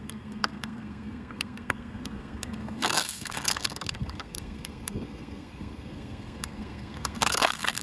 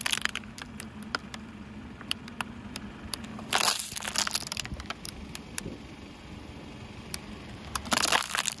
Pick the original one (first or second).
second